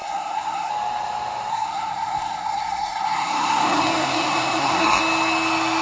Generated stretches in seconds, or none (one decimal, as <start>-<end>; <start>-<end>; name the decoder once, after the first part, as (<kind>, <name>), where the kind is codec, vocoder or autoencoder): 0.0-0.7 (codec, SNAC); 1.5-5.0